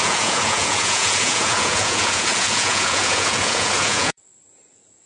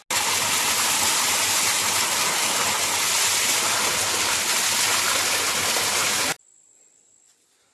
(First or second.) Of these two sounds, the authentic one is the second